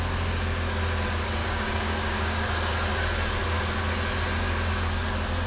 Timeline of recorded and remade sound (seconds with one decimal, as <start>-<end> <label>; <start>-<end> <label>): 0.0-1.4 recorded; 1.4-2.7 remade; 2.7-5.5 recorded

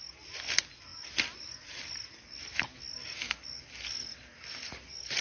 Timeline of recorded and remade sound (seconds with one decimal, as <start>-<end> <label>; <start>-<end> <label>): 0.0-5.2 recorded

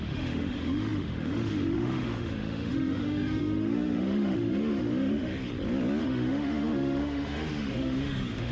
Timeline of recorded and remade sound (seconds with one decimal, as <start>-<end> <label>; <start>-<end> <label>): 0.0-5.3 remade; 5.3-6.0 recorded; 6.0-8.5 remade

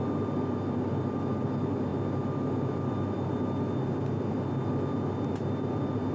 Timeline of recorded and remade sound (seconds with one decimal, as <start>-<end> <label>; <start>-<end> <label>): 0.0-6.1 recorded